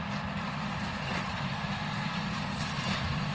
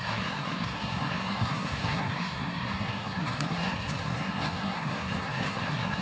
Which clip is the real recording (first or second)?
first